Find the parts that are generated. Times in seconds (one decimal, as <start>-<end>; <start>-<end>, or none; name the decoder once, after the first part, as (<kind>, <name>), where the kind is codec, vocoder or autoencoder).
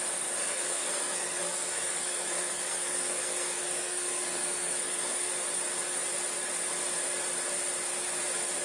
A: 0.4-5.3 (codec, SNAC)